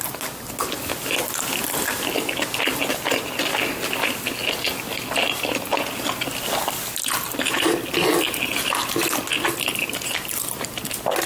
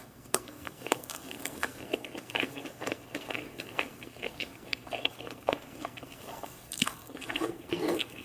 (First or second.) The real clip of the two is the first